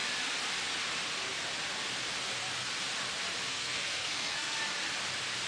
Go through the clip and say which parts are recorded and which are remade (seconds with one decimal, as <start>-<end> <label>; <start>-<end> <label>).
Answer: 0.0-3.5 recorded; 3.5-4.6 remade; 4.6-5.5 recorded